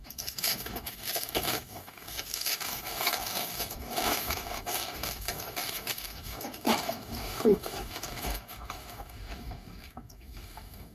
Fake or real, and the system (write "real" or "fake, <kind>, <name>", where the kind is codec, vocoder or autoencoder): fake, codec, DAC